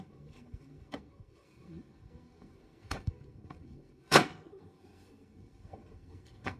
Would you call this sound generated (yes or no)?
yes